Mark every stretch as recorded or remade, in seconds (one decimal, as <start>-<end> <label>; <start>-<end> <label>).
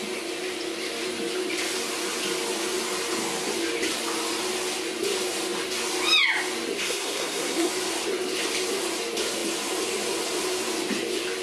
0.0-6.8 recorded; 6.8-7.7 remade; 7.7-11.4 recorded